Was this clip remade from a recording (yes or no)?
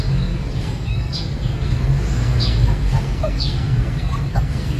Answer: yes